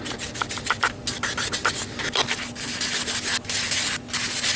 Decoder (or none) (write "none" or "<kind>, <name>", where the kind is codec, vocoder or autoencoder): none